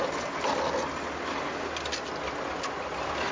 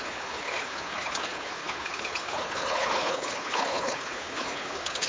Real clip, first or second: first